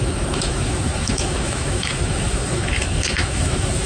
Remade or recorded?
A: remade